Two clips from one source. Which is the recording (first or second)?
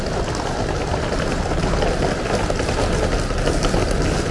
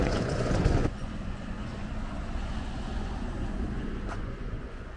first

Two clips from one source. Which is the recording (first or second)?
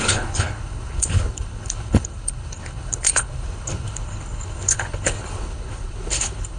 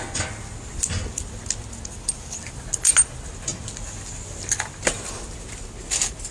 second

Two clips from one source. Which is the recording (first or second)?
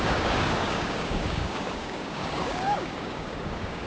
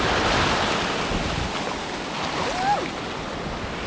second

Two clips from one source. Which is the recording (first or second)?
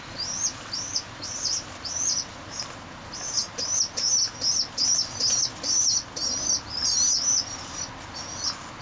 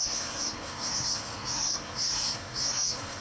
first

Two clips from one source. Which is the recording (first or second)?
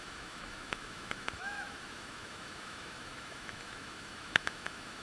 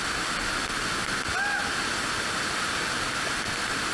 second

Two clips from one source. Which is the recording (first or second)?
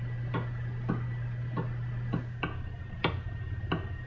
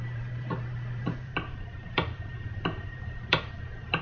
first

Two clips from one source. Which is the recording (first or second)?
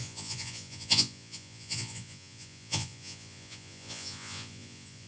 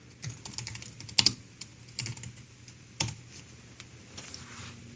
second